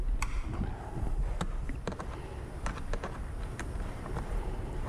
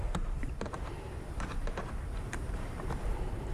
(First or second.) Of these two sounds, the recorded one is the first